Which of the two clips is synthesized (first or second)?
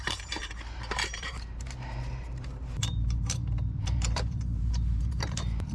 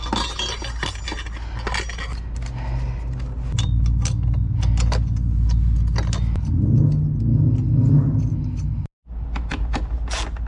first